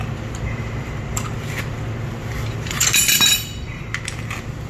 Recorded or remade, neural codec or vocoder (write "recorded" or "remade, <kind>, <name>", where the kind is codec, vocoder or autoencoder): recorded